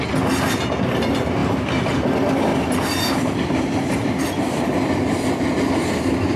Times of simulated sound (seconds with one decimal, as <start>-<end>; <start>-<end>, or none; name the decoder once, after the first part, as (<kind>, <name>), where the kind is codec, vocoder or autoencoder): 2.5-5.7 (vocoder, BigVGAN v2)